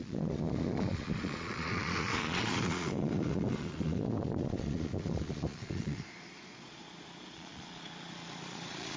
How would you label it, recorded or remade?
remade